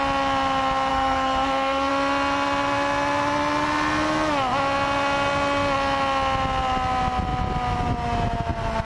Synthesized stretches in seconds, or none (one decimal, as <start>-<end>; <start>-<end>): 0.9-1.9